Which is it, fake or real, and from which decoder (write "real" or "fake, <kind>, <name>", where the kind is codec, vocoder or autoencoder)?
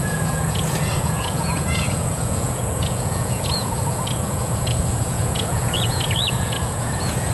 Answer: fake, vocoder, Vocos